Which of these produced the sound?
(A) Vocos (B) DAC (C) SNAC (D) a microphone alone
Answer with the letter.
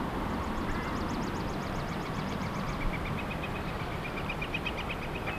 D